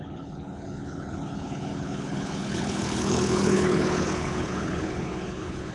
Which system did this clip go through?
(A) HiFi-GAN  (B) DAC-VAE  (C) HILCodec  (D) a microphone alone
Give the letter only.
C